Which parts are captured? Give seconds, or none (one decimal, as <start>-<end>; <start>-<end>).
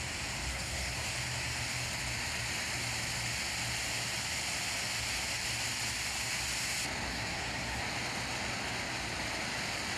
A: 0.0-0.5; 1.1-7.1; 7.8-10.0